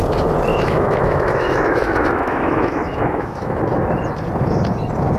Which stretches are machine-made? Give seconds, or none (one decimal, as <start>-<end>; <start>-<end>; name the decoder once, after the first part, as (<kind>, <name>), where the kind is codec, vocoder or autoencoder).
0.5-3.6 (autoencoder, DAC-VAE)